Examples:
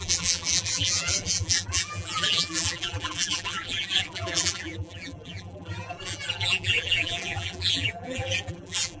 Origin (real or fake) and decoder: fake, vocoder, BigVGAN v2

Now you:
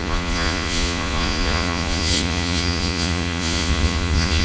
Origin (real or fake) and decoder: fake, vocoder, Vocos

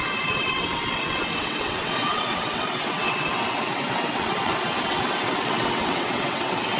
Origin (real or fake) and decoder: fake, vocoder, WaveNeXt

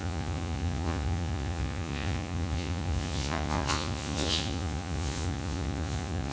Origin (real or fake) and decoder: fake, vocoder, Vocos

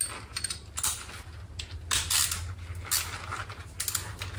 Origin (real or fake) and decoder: real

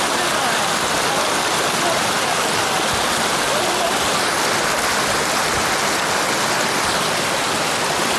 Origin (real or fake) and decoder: real